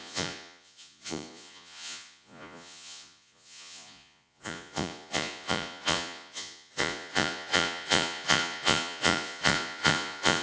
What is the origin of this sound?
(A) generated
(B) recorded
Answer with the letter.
A